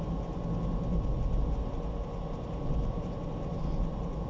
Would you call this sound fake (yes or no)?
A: no